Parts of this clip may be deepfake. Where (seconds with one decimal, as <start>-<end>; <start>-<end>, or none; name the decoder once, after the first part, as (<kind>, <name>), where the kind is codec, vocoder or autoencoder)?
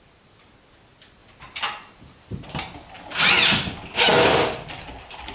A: none